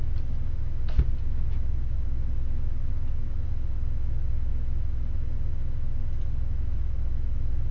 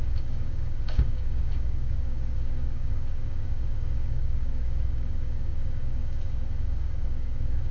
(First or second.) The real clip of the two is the first